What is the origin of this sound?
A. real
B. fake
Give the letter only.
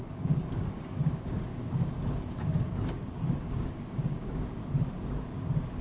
B